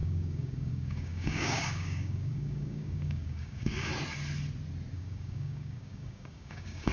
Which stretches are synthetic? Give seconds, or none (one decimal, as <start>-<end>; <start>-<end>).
0.0-3.9; 4.9-6.9